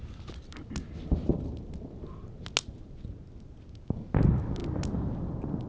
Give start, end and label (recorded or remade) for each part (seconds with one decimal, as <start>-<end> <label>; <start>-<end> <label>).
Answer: 0.0-5.7 recorded